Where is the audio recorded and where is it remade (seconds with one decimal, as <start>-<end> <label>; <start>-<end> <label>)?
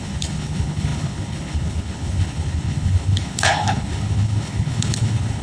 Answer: 0.0-5.4 remade